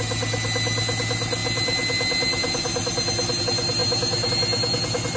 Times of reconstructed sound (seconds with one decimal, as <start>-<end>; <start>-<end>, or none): none